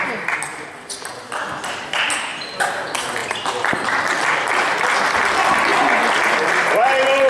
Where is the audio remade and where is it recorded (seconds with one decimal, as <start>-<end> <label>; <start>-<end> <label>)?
0.0-0.5 recorded; 0.5-1.3 remade; 1.3-2.3 recorded; 2.3-2.8 remade; 2.8-3.2 recorded; 3.2-4.5 remade; 4.5-7.3 recorded

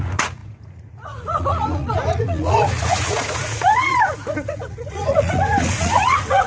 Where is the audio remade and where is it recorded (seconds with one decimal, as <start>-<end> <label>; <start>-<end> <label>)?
0.0-6.5 remade

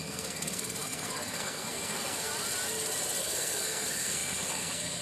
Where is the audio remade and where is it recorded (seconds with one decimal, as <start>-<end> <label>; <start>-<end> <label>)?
0.0-2.3 remade; 2.3-3.2 recorded; 3.2-5.0 remade

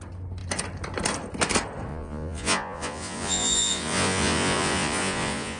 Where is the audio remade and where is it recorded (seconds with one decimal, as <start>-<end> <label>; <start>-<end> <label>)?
0.0-1.9 recorded; 1.9-5.6 remade

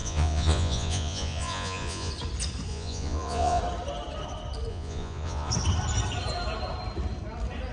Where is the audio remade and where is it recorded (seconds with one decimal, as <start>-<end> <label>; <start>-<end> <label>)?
0.0-2.1 remade; 2.1-2.7 recorded; 2.7-3.6 remade; 3.6-4.7 recorded; 4.7-5.5 remade; 5.5-7.7 recorded

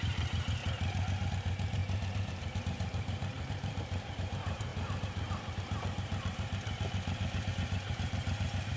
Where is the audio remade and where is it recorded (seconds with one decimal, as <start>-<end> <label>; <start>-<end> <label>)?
0.0-0.6 remade; 0.6-1.3 recorded; 1.3-8.8 remade